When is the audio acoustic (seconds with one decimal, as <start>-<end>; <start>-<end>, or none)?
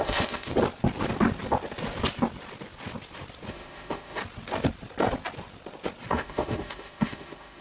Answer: 0.5-3.5; 4.2-6.1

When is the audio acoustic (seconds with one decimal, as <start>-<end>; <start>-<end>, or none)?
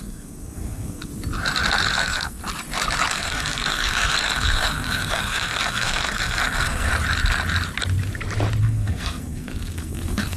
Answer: 1.1-1.9; 2.4-3.1; 6.9-8.6